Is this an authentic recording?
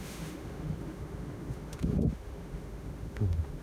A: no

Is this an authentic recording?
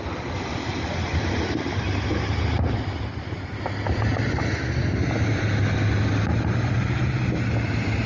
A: yes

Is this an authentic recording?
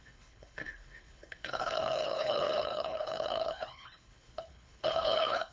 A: no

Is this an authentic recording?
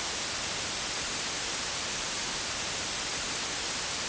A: yes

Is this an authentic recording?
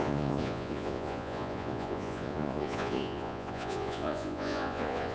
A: no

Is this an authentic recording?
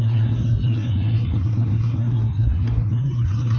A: no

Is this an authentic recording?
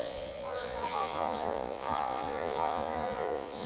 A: no